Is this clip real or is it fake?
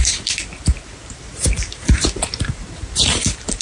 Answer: fake